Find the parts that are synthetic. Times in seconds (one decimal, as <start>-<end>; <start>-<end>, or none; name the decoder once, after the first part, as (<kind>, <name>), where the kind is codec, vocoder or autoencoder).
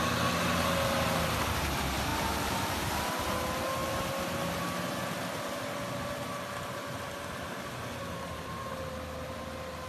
2.1-2.9 (vocoder, BigVGAN v2)